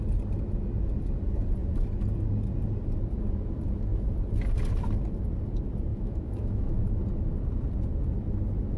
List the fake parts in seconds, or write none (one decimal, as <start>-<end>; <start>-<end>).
5.9-7.0